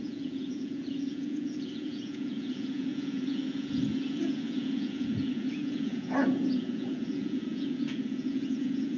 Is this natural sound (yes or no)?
no